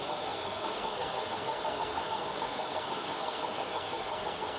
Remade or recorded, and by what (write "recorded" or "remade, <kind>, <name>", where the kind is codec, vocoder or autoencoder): remade, codec, SNAC